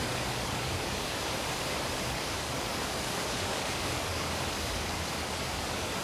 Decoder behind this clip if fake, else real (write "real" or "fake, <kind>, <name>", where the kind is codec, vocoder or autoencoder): fake, codec, DAC